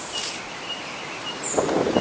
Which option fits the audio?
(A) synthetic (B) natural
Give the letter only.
B